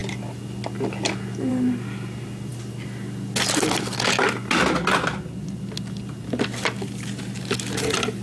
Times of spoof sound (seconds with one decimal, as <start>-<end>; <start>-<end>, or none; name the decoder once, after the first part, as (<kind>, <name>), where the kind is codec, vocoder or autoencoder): none

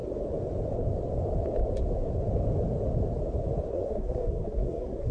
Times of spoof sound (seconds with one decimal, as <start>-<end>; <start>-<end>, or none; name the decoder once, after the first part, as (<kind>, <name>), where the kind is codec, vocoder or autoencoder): 3.7-5.1 (codec, SNAC)

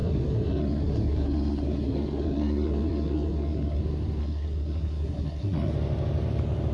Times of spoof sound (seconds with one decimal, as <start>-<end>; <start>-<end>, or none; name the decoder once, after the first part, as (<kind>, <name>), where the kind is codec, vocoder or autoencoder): 0.0-3.8 (codec, SNAC); 4.2-5.7